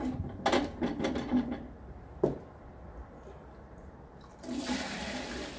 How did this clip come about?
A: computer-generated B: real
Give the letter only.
B